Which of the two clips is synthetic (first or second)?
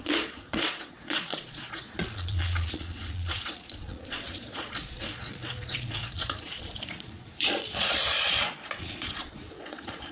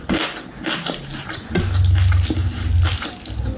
first